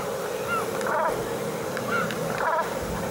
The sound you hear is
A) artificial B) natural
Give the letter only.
B